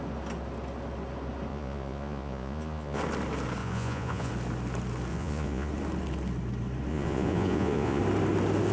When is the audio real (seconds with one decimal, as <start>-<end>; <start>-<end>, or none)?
0.0-1.5; 3.0-3.6; 4.3-5.1; 5.7-6.9; 8.0-8.7